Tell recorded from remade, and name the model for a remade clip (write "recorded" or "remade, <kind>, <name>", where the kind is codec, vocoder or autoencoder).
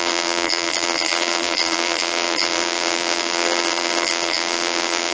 remade, vocoder, BigVGAN v2